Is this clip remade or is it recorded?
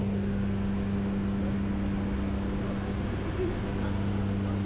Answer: recorded